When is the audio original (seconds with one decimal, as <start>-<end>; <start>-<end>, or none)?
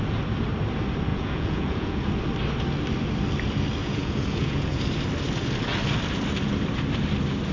0.0-1.1; 2.0-3.8; 4.8-7.5